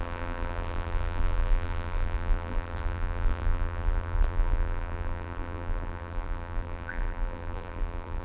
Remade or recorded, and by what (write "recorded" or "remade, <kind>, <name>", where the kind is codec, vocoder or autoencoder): remade, vocoder, BigVGAN v2